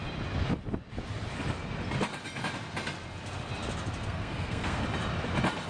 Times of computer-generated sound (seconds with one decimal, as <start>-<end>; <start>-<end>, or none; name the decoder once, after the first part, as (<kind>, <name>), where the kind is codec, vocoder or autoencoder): 4.0-4.8 (codec, SNAC)